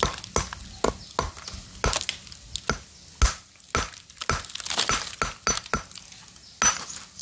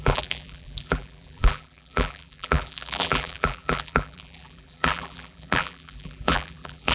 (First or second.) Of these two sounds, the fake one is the second